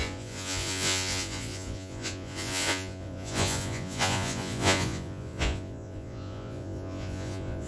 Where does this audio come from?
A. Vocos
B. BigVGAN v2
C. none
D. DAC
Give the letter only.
A